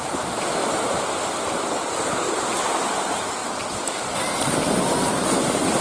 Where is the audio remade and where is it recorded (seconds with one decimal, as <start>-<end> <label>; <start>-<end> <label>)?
0.0-5.8 recorded